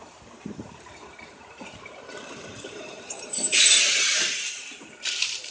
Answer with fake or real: fake